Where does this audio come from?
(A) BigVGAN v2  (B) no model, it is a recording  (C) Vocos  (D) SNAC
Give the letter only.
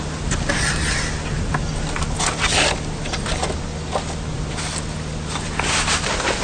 B